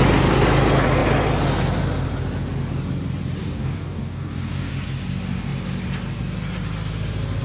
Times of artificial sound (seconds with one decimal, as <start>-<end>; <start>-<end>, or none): 3.4-4.7

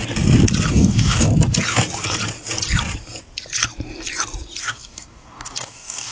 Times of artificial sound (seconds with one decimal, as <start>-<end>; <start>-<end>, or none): 0.7-1.3; 4.6-6.1

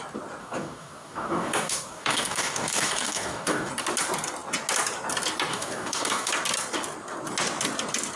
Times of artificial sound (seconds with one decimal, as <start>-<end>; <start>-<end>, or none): 0.4-3.7; 5.5-6.3

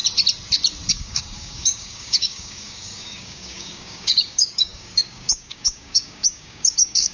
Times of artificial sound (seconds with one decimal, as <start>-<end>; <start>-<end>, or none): 0.9-7.1

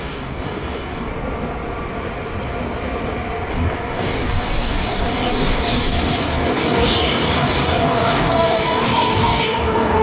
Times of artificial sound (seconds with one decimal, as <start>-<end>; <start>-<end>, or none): 0.0-1.1; 3.5-10.0

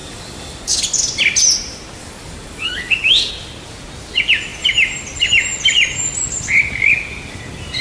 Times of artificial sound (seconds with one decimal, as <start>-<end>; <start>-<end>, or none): 0.0-0.8; 2.0-3.3

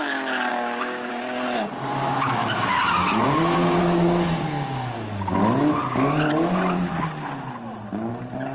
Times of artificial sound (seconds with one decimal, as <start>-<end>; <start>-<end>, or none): 0.0-5.4; 8.1-8.5

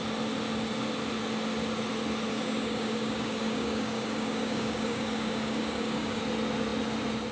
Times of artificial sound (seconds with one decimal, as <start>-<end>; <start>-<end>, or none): 2.3-6.2